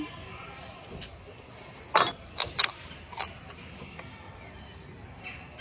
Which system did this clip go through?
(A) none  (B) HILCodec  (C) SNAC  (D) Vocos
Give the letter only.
A